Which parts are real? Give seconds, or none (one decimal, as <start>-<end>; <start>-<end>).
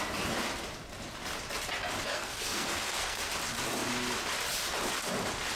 0.0-2.1; 3.3-5.6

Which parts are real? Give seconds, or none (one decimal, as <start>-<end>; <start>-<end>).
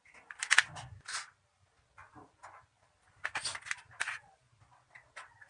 0.0-5.5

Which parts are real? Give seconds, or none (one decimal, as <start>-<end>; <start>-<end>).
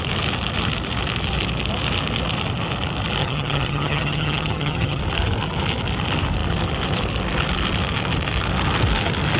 0.0-3.2; 5.0-9.4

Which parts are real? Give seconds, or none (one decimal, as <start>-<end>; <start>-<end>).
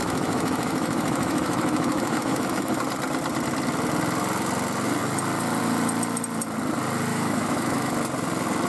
2.8-7.1; 7.9-8.7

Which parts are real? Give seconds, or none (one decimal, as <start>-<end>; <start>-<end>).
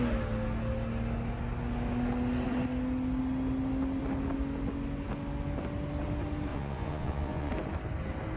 0.0-6.5; 7.5-8.4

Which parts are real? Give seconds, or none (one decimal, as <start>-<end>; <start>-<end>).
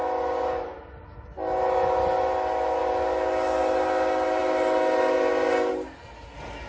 0.0-6.7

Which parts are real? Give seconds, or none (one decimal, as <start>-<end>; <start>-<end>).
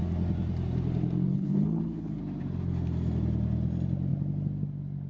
0.0-1.3; 2.2-5.1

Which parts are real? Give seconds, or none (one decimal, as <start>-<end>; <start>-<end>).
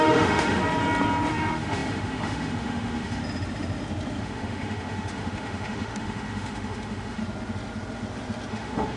0.6-1.3; 3.2-4.2; 7.2-8.5